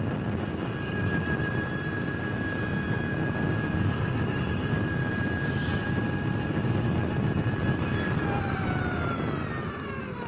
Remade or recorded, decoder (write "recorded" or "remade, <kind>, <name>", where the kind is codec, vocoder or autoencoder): recorded